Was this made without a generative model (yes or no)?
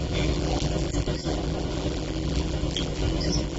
no